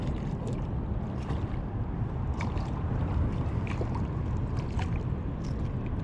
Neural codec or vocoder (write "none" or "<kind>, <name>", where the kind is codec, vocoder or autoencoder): none